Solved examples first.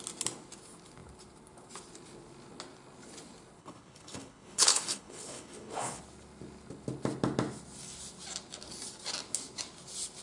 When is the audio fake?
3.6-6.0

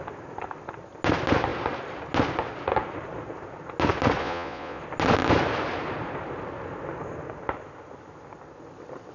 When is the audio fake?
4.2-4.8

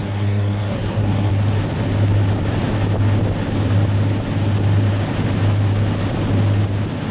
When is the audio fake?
0.0-1.3

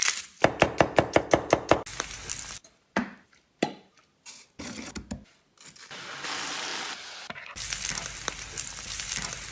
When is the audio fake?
0.0-1.2; 1.9-4.8; 6.7-9.0

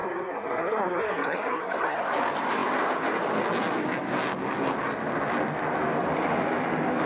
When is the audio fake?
0.0-2.0